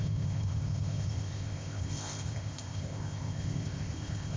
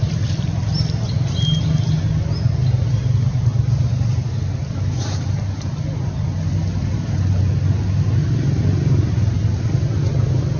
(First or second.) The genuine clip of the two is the second